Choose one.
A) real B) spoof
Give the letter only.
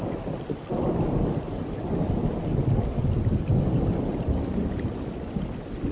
A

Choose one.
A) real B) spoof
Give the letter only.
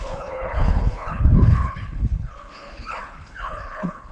B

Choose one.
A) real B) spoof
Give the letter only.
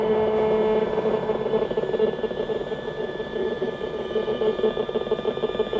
A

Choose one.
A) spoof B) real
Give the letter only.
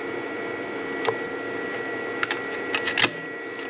B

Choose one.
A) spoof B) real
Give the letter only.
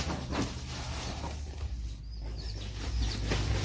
B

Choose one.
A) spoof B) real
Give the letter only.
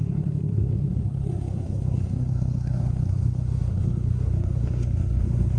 A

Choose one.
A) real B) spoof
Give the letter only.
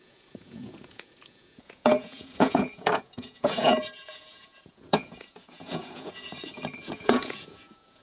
B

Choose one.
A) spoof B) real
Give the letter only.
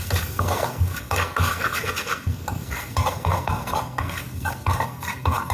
A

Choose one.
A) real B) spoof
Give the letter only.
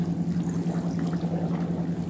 A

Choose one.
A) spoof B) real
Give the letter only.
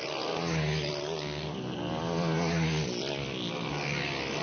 B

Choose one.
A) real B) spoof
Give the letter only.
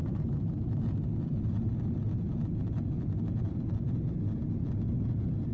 A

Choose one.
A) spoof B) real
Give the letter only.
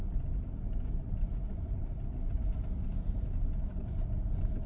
A